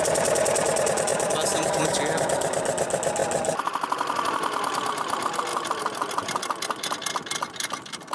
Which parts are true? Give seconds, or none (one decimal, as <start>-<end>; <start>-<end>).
0.0-1.1; 2.0-5.5; 6.4-8.1